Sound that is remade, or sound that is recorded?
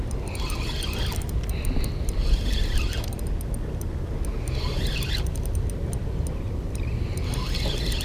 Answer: recorded